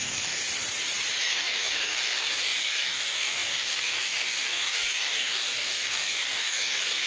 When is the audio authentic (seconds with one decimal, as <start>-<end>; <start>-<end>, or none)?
0.4-1.2